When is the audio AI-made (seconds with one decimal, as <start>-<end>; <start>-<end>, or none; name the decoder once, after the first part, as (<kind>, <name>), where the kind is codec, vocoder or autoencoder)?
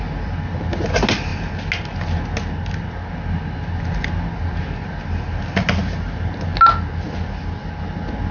none